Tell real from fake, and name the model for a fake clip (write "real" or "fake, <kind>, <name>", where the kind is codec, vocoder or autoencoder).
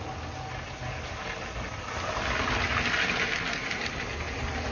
real